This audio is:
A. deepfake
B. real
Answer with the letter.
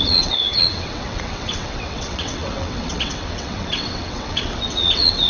A